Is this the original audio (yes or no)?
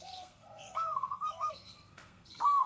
no